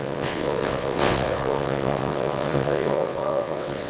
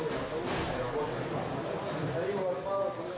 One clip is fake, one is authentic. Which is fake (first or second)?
first